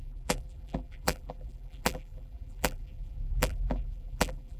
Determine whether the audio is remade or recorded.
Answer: remade